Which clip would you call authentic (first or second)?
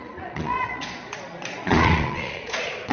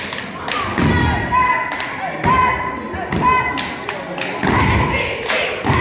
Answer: second